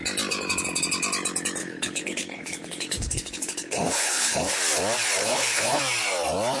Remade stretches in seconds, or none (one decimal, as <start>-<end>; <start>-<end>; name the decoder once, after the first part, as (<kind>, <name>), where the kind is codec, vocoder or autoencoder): 1.6-4.6 (codec, HILCodec); 5.2-5.8